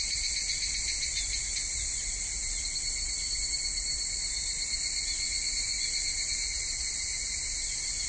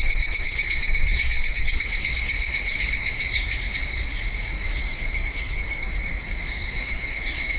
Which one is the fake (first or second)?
second